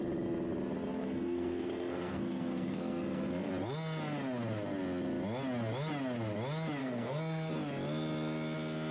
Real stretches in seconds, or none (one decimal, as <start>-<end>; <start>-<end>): 0.0-1.0; 3.5-6.8; 7.5-8.9